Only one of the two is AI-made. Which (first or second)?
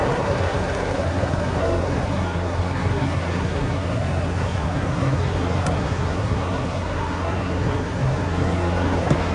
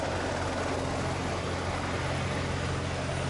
first